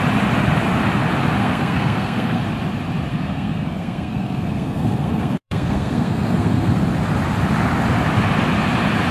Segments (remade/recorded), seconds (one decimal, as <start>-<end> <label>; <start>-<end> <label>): 0.0-1.4 recorded; 1.4-2.4 remade; 2.4-3.1 recorded; 3.1-6.8 remade; 6.8-9.1 recorded